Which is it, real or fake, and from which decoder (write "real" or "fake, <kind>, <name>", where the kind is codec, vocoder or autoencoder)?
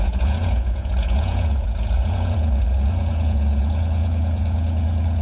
fake, vocoder, Vocos